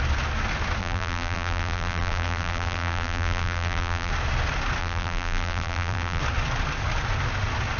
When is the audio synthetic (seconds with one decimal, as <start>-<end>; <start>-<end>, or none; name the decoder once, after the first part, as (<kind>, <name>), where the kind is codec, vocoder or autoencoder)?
0.8-4.1 (vocoder, BigVGAN v2); 4.8-6.2